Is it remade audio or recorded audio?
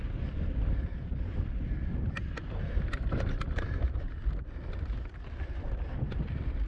recorded